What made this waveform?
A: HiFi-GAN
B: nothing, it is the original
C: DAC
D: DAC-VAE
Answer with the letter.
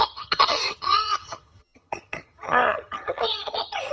A